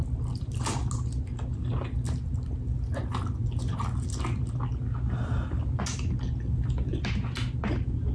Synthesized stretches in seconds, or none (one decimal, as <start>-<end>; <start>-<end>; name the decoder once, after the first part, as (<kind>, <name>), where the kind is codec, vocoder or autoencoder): none

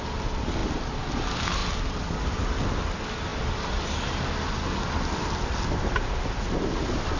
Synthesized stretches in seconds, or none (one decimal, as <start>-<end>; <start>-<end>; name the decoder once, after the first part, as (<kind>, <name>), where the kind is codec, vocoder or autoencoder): none

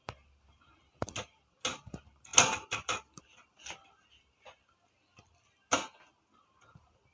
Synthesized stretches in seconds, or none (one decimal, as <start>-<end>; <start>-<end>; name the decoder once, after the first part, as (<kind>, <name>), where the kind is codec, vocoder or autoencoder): none